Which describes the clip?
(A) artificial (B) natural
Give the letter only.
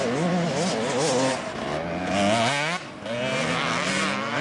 B